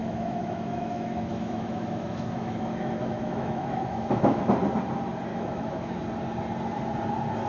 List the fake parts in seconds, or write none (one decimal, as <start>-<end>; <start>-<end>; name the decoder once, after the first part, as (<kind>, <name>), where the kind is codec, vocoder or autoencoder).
0.0-4.5 (autoencoder, DAC-VAE); 5.3-6.0